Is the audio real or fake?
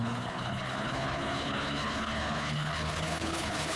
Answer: fake